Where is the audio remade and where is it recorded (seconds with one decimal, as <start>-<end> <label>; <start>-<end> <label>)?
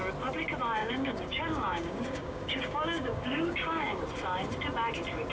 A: 0.0-0.8 recorded; 0.8-4.0 remade; 4.0-5.3 recorded